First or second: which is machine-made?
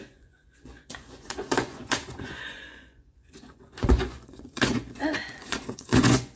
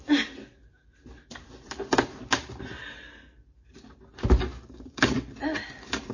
first